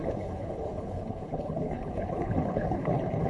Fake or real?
fake